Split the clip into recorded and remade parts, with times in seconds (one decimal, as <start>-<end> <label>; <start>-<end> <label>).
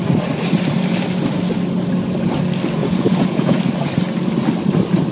0.0-2.8 recorded; 2.8-3.6 remade; 3.6-5.1 recorded